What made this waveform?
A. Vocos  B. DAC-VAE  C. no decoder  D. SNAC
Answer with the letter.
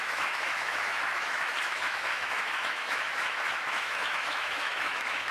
B